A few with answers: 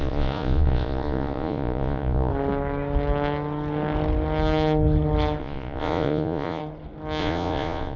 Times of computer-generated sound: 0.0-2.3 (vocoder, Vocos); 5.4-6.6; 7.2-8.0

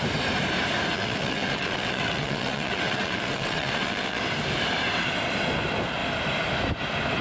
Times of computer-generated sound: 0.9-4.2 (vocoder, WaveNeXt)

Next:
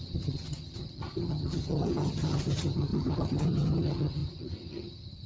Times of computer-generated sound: 0.0-5.3 (vocoder, HiFi-GAN)